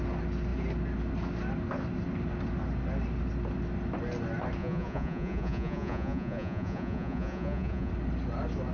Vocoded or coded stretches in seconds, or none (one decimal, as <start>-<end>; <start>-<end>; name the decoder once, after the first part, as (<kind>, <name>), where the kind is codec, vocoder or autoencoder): 4.6-7.9 (vocoder, Vocos)

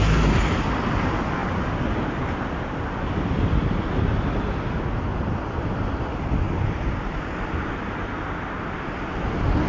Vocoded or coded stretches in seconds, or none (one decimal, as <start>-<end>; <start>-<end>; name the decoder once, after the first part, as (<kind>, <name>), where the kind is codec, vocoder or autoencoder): none

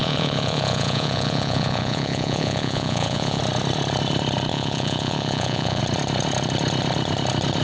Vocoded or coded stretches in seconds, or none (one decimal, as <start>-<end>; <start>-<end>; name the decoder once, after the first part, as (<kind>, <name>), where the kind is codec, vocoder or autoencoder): 0.0-3.4 (vocoder, Vocos); 4.5-5.8